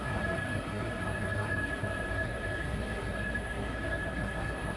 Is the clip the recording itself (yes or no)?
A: no